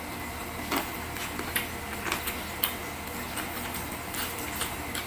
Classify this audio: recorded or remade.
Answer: recorded